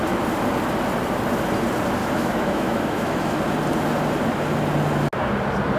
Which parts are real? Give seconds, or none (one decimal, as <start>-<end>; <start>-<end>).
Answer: 0.0-2.0; 3.4-5.8